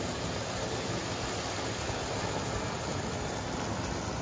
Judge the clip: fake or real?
real